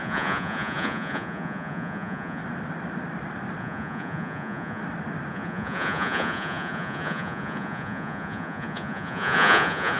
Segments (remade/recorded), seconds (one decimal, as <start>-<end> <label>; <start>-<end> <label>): 0.0-2.4 remade; 2.4-3.6 recorded; 3.6-4.8 remade; 4.8-5.3 recorded; 5.3-10.0 remade